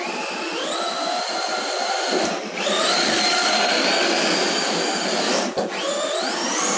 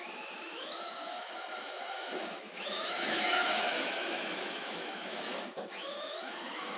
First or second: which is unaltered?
first